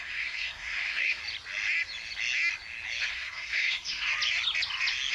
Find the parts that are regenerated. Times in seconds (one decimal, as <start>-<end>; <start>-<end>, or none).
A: 0.0-1.2; 3.1-4.1